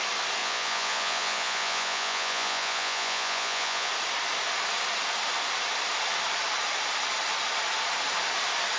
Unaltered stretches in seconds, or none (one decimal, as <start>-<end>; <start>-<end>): 0.0-0.4; 3.9-8.8